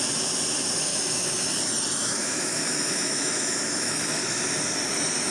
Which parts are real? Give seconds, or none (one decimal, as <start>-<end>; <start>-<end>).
0.0-0.9; 1.5-2.0; 4.4-5.3